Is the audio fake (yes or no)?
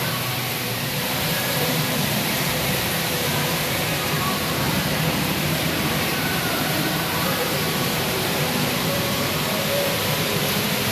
yes